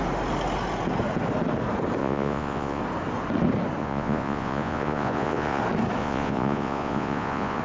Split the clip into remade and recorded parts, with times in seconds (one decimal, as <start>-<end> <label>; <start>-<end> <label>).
0.0-2.0 recorded; 2.0-2.8 remade; 2.8-3.8 recorded; 3.8-5.6 remade; 5.6-6.0 recorded; 6.0-7.6 remade

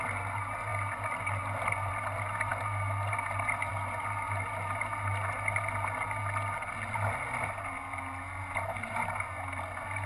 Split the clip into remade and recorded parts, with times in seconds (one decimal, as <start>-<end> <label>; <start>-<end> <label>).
0.0-10.1 recorded

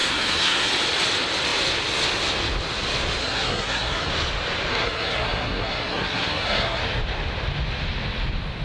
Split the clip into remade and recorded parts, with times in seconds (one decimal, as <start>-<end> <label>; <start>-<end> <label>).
0.0-0.7 remade; 0.7-3.2 recorded; 3.2-4.1 remade; 4.1-4.7 recorded; 4.7-6.8 remade; 6.8-8.6 recorded

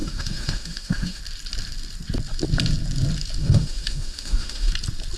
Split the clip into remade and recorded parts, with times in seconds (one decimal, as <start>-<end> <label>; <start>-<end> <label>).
0.0-1.2 remade; 1.2-3.4 recorded; 3.4-4.7 remade; 4.7-5.2 recorded

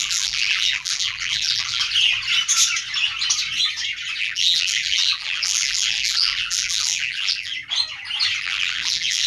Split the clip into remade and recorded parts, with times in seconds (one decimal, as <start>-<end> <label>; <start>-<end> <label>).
0.0-1.8 remade; 1.8-4.2 recorded; 4.2-7.5 remade; 7.5-8.4 recorded; 8.4-9.3 remade

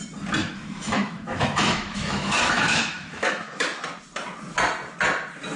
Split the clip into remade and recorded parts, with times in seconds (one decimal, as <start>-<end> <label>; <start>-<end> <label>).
0.0-0.4 recorded; 0.4-3.8 remade; 3.8-5.6 recorded